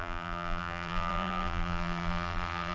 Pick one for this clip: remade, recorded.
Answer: remade